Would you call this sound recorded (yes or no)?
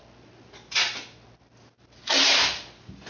yes